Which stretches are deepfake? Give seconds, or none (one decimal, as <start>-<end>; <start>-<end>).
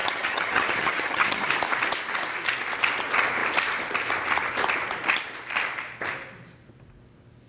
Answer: 0.0-1.5